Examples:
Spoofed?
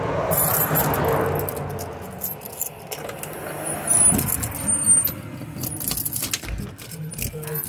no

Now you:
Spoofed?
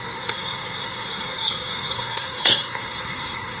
yes